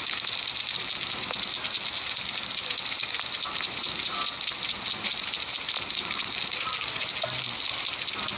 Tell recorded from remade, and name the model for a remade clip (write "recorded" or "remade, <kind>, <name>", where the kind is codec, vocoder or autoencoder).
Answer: recorded